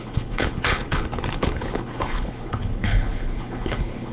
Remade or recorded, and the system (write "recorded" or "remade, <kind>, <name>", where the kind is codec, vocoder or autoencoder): remade, codec, HILCodec